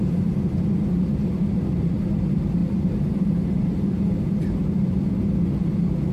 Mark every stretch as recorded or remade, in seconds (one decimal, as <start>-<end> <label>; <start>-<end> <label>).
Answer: 0.0-2.6 recorded; 2.6-5.0 remade; 5.0-6.1 recorded